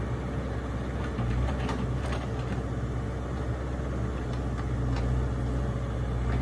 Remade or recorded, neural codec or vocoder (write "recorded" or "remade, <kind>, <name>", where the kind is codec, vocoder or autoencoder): recorded